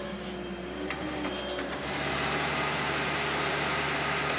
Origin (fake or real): real